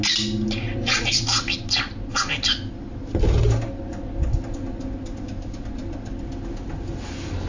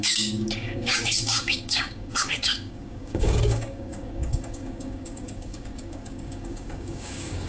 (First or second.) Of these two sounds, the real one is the first